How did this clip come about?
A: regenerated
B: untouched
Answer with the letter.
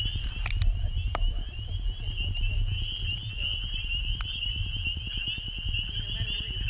B